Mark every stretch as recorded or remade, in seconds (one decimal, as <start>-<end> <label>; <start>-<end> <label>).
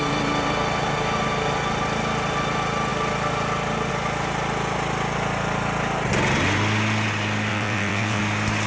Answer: 0.0-7.5 recorded; 7.5-8.2 remade; 8.2-8.7 recorded